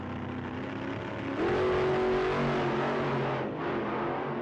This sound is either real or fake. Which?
real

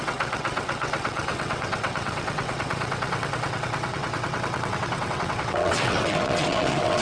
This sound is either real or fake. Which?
fake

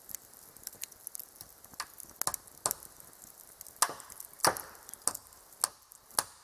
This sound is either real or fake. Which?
real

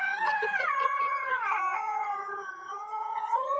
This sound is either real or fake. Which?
fake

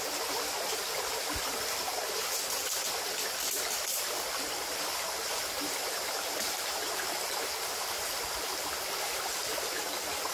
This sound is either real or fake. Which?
real